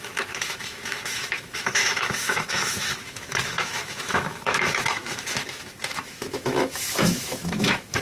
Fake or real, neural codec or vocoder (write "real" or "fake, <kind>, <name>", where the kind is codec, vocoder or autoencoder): fake, autoencoder, DAC-VAE